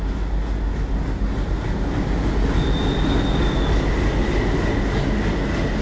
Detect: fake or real real